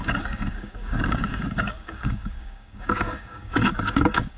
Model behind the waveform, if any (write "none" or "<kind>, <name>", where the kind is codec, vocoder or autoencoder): codec, DAC